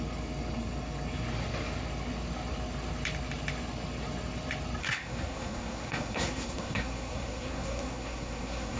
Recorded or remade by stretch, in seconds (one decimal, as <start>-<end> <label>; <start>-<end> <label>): 0.0-4.8 recorded; 4.8-8.8 remade